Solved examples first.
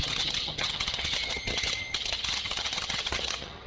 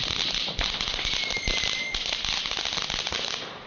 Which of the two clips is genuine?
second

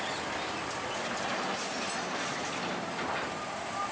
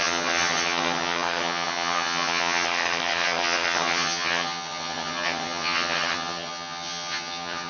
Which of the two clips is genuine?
first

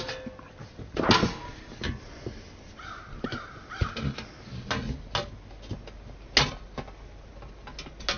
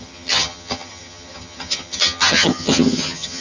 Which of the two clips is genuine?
first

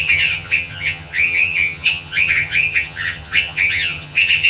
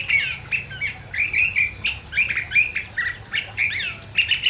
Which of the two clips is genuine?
second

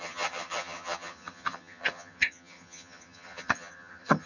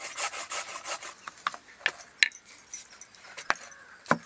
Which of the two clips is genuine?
second